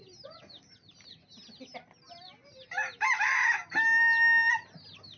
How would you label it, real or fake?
real